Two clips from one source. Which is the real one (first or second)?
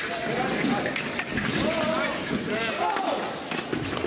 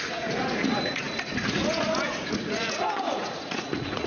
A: first